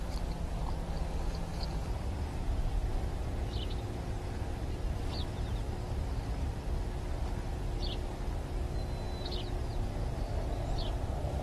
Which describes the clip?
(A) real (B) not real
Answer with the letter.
A